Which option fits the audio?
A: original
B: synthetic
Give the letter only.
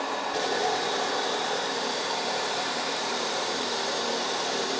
B